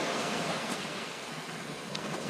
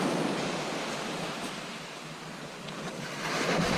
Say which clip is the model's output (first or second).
first